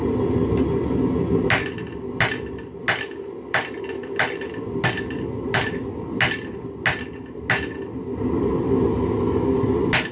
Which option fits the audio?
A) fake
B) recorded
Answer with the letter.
B